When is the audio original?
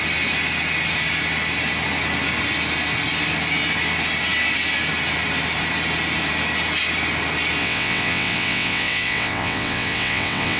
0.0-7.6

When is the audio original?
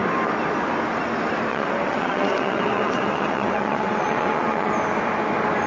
0.0-1.5; 4.7-5.7